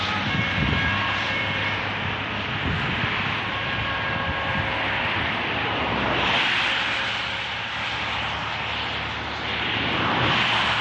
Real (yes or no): no